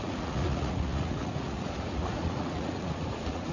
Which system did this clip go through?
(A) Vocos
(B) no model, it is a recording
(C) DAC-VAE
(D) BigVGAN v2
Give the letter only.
A